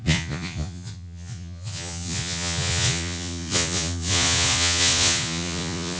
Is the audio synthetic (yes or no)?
yes